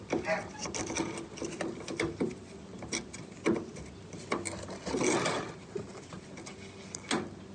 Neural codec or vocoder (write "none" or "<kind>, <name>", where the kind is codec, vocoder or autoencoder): none